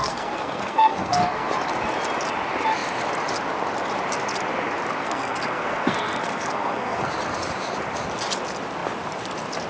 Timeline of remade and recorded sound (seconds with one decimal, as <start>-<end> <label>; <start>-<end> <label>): 0.0-1.5 remade; 1.5-5.0 recorded; 5.0-7.1 remade; 7.1-9.7 recorded